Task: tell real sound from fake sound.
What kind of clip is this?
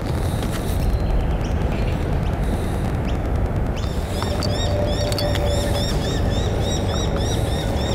real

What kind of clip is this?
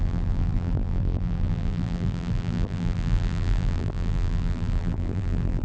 fake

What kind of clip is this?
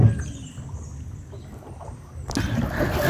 real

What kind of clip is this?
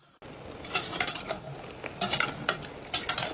real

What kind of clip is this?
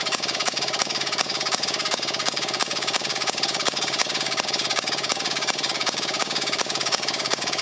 fake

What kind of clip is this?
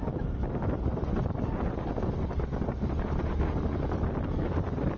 real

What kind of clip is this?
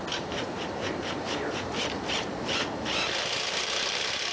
fake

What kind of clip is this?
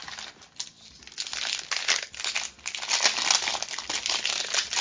real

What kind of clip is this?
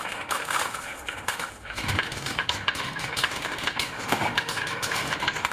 fake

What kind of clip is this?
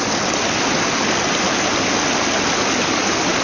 real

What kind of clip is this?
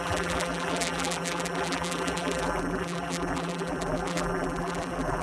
fake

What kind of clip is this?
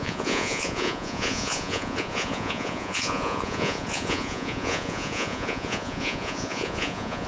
fake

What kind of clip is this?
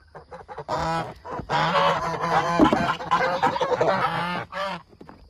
real